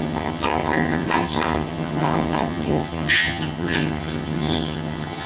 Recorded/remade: remade